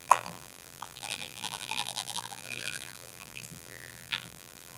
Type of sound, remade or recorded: remade